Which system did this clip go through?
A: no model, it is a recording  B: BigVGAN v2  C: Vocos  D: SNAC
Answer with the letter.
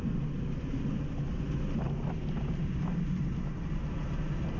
A